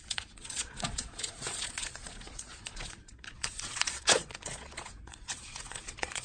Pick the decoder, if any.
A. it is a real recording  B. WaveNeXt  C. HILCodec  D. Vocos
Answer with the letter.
D